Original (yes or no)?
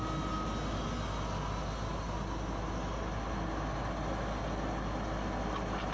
yes